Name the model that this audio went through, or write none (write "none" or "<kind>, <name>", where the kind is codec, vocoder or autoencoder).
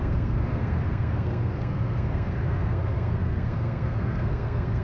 codec, SNAC